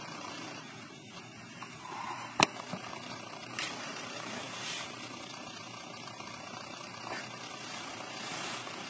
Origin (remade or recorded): remade